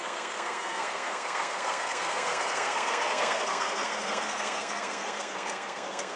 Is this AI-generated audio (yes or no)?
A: yes